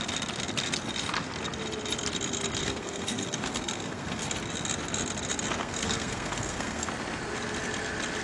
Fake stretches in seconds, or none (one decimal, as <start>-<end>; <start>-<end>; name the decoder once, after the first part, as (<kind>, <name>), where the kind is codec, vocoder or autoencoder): 2.6-4.3 (codec, SNAC); 5.6-6.9